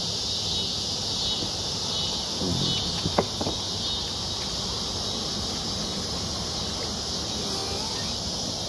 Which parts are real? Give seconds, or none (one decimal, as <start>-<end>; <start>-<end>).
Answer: 0.0-8.7